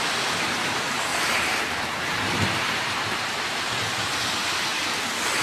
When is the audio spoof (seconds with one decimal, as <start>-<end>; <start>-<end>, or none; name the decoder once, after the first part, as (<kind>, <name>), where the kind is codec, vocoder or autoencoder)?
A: 1.1-3.1 (vocoder, BigVGAN v2)